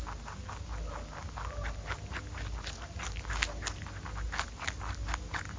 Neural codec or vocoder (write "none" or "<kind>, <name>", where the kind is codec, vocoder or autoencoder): none